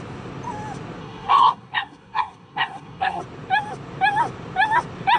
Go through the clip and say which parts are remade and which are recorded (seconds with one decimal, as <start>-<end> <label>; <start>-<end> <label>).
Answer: 0.0-1.0 recorded; 1.0-3.2 remade; 3.2-5.2 recorded